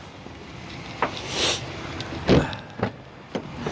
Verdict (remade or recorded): recorded